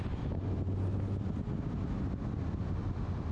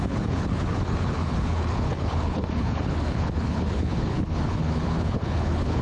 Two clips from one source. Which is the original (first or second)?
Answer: first